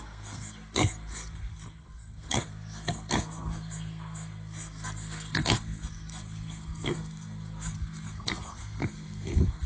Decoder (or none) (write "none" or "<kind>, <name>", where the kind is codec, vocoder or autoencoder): codec, SNAC